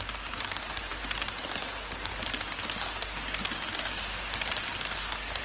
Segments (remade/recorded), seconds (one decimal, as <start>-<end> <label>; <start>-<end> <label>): 0.0-5.4 recorded